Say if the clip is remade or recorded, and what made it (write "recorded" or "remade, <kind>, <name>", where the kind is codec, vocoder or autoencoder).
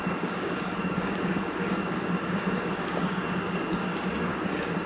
remade, codec, DAC